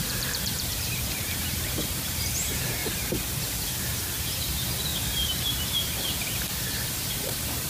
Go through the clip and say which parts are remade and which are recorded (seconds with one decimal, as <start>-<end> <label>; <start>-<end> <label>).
0.0-2.8 remade; 2.8-4.2 recorded; 4.2-7.7 remade